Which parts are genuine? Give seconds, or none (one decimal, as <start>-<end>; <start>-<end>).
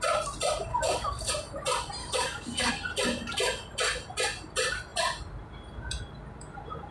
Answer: 0.0-0.7; 1.3-2.0; 2.7-6.9